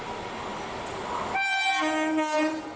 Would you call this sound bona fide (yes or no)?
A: yes